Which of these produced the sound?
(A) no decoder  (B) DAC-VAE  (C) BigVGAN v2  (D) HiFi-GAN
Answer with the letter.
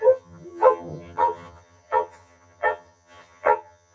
D